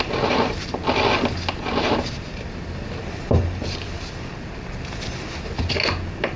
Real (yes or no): yes